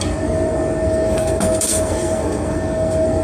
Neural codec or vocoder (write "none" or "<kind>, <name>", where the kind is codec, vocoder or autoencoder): codec, SNAC